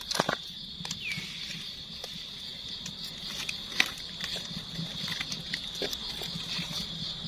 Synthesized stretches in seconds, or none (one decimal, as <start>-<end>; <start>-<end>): 0.4-1.9